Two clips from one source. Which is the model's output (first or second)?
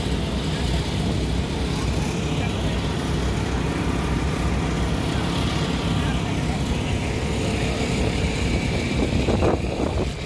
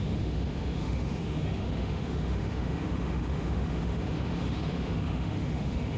second